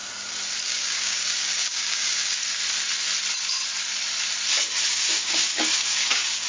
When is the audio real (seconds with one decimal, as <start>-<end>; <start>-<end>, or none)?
0.0-0.6; 2.4-4.9